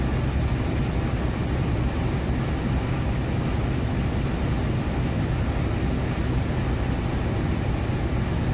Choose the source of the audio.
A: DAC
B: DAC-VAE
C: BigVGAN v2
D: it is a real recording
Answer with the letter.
D